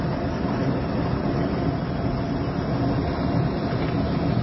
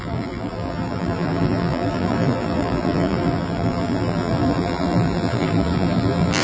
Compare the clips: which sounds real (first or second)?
first